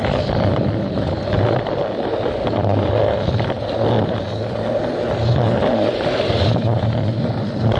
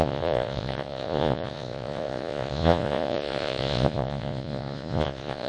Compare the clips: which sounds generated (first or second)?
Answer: second